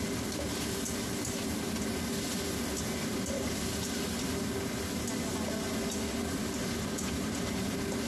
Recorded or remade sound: recorded